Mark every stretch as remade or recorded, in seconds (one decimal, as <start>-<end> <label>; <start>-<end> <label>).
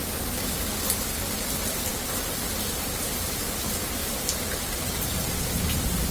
0.0-4.0 recorded; 4.0-5.5 remade; 5.5-6.1 recorded